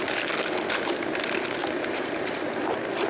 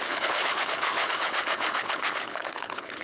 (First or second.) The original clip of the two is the first